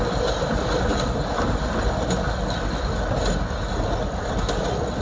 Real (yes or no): yes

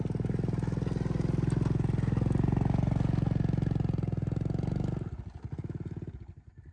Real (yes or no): yes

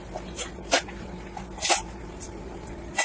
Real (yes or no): yes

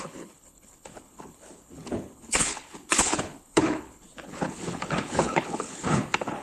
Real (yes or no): no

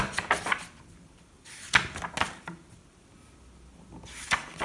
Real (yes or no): yes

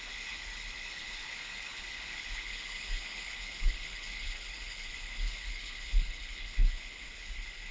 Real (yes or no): no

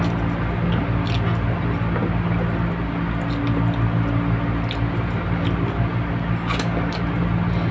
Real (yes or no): yes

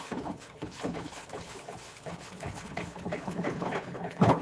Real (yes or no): no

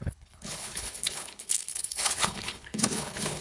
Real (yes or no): no